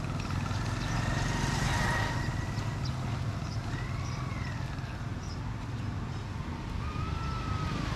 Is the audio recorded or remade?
recorded